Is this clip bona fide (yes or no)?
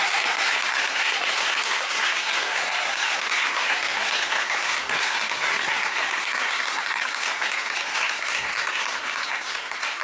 no